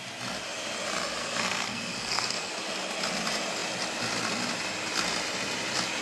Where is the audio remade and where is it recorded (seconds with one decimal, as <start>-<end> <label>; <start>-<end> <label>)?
0.0-1.2 recorded; 1.2-2.5 remade; 2.5-6.0 recorded

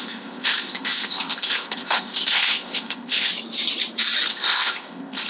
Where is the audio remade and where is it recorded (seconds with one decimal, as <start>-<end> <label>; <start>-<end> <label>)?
0.0-3.3 remade; 3.3-4.3 recorded; 4.3-5.3 remade

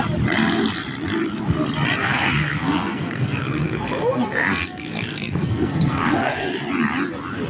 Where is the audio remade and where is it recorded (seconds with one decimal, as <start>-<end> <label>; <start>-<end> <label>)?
0.0-2.0 recorded; 2.0-6.5 remade; 6.5-7.5 recorded

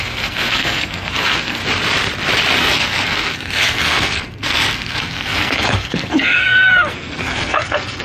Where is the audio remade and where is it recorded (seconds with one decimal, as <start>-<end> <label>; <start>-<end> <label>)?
0.0-1.6 remade; 1.6-2.6 recorded; 2.6-8.0 remade

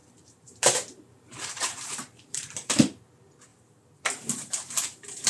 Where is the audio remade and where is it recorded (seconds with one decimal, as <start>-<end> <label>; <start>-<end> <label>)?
0.0-2.7 remade; 2.7-3.5 recorded; 3.5-5.3 remade